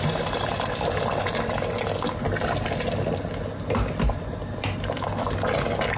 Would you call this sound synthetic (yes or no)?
no